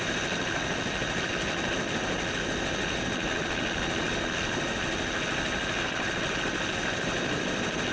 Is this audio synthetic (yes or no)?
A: no